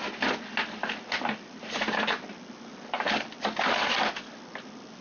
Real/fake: real